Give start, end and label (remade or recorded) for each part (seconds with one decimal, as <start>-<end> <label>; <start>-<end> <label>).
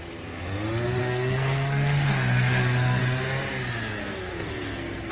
0.0-1.0 recorded; 1.0-3.0 remade; 3.0-4.0 recorded; 4.0-5.1 remade